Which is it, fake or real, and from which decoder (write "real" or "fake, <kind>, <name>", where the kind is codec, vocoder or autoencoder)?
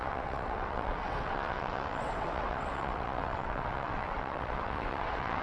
fake, vocoder, WaveNeXt